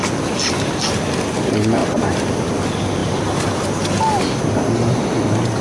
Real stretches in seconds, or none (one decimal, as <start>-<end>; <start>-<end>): 0.0-1.8; 2.5-3.0; 3.6-5.6